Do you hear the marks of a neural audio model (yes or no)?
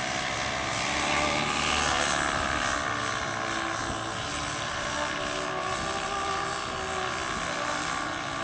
no